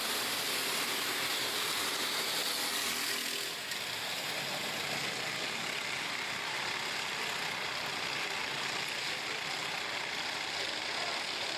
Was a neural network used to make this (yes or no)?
no